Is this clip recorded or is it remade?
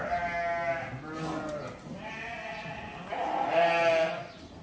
recorded